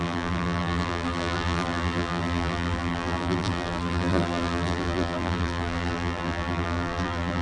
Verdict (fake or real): fake